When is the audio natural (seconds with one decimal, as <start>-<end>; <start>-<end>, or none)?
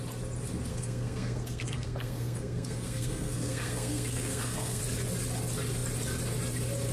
0.0-0.7; 4.8-6.9